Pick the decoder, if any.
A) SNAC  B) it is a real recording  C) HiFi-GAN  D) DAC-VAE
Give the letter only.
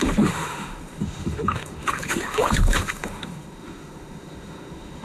D